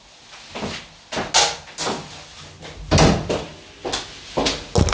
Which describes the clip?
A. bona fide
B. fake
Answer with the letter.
A